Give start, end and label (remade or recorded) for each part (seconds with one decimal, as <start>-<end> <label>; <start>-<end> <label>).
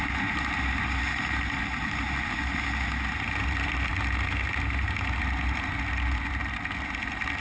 0.0-7.4 recorded